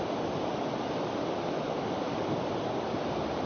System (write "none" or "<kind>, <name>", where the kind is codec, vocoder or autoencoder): none